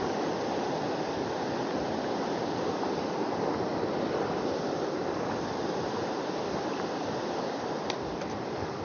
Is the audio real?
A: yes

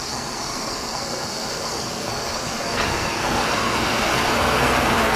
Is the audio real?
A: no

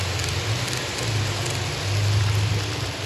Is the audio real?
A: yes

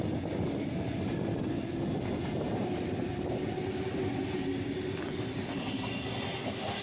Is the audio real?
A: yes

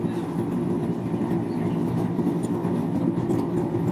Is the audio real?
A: yes